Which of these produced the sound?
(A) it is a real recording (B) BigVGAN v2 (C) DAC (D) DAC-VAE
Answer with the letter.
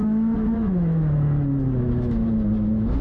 D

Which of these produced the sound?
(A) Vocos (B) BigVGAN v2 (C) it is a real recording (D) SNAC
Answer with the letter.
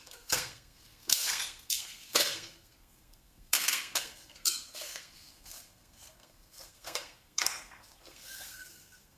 D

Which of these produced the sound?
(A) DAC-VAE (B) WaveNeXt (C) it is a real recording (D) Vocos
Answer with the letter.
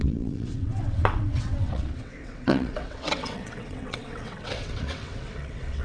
B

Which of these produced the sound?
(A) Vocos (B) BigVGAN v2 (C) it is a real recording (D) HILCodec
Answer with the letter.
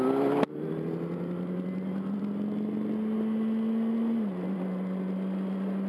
C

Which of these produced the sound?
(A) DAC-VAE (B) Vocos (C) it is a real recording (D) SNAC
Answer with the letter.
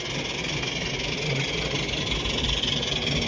C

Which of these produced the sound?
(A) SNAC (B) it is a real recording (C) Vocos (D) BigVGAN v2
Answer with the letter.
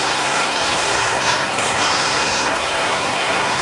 A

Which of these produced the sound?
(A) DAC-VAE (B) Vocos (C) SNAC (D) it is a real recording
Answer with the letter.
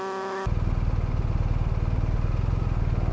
D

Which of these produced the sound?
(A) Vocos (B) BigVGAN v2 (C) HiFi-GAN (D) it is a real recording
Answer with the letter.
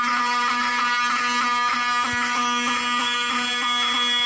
D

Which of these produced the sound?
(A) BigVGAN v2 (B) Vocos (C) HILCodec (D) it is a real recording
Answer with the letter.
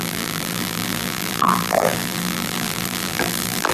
A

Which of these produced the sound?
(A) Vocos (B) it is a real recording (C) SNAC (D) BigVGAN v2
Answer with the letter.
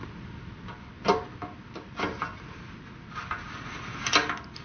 B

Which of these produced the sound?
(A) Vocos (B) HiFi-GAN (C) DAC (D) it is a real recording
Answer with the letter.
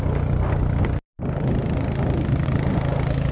D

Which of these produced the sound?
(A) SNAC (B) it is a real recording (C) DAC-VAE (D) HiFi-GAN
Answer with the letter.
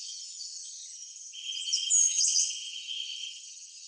D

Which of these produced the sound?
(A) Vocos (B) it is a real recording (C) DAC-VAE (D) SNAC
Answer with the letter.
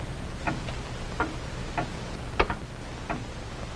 B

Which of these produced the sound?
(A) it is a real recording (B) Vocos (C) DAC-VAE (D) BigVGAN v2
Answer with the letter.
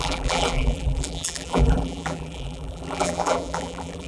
D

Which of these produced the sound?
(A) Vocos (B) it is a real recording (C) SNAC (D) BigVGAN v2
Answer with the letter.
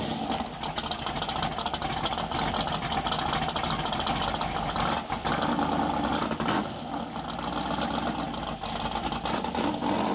B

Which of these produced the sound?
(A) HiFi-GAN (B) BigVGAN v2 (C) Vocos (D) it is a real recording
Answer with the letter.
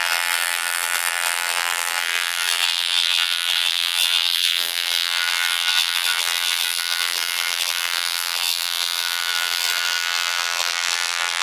B